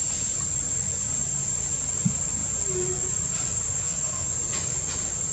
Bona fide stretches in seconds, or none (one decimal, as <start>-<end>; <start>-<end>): 0.0-3.8; 4.3-5.3